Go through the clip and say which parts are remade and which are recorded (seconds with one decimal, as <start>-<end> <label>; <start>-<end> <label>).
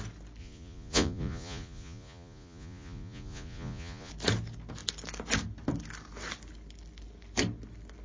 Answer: 0.0-0.4 recorded; 0.4-4.1 remade; 4.1-8.0 recorded